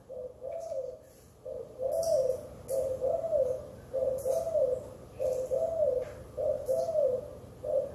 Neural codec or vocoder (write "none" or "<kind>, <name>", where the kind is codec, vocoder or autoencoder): none